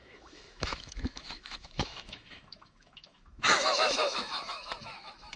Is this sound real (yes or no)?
no